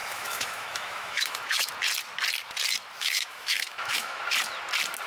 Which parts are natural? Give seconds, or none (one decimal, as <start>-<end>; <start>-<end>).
1.7-3.0; 4.2-5.1